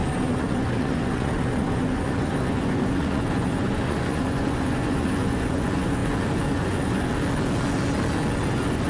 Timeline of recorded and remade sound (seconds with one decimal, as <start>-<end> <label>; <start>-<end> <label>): 0.0-7.1 remade; 7.1-8.5 recorded; 8.5-8.9 remade

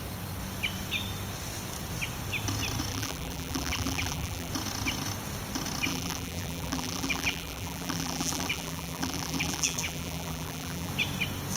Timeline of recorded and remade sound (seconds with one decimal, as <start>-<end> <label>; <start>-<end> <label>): 0.0-2.9 recorded; 2.9-4.5 remade; 4.5-5.9 recorded; 5.9-10.9 remade; 10.9-11.6 recorded

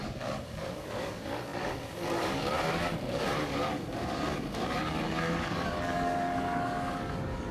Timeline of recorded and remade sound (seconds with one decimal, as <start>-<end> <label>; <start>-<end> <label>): 0.0-7.5 remade